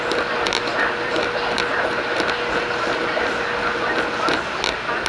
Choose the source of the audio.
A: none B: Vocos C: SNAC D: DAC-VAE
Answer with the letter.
A